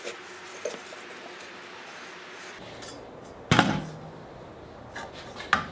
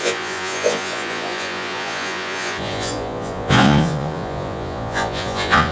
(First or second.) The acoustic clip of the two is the first